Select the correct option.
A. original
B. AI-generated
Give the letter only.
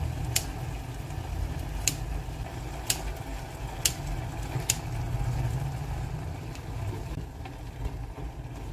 A